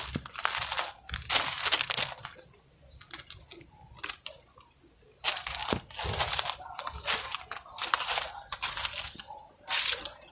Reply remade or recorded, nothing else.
recorded